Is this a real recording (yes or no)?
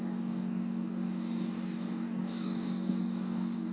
no